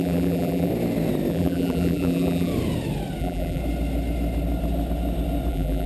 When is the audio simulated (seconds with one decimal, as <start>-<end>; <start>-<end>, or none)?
0.0-0.7; 1.3-2.5; 3.2-3.6; 5.5-5.9